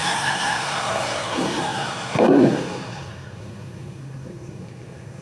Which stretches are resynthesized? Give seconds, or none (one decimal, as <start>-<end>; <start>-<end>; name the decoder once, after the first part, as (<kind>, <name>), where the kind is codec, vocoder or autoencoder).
0.0-5.2 (codec, SNAC)